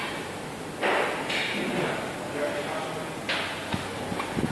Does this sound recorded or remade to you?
recorded